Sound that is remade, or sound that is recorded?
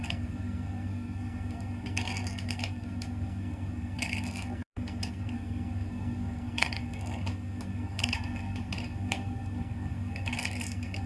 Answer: remade